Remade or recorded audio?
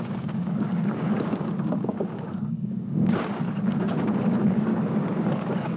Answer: remade